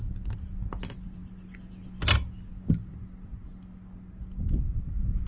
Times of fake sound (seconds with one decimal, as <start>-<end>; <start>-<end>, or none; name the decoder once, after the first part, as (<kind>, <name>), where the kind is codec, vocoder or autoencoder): none